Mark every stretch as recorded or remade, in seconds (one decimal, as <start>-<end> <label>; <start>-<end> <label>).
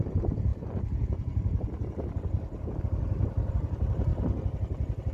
0.0-5.1 recorded